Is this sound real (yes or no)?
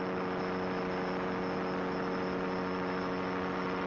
yes